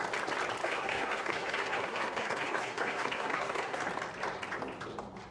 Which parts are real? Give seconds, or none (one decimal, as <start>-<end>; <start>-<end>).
0.0-0.6; 3.8-5.3